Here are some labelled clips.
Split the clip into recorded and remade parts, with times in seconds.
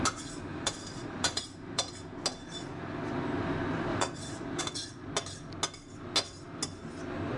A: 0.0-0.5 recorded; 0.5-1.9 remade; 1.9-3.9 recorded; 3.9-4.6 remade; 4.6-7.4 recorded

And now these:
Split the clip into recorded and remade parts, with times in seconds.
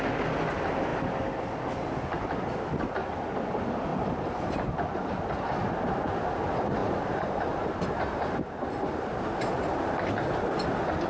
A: 0.0-3.9 recorded; 3.9-4.9 remade; 4.9-6.8 recorded; 6.8-10.1 remade; 10.1-11.1 recorded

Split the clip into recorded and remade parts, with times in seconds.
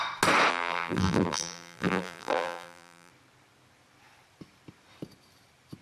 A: 0.0-0.5 recorded; 0.5-3.1 remade; 3.1-5.8 recorded